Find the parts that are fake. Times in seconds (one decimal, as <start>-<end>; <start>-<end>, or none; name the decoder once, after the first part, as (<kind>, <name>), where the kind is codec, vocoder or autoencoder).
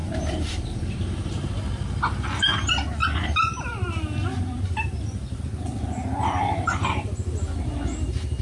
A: 0.0-1.5 (vocoder, BigVGAN v2); 3.0-5.4